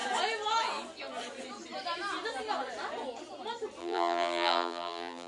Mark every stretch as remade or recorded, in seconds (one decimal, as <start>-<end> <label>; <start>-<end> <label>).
0.0-3.8 recorded; 3.8-5.3 remade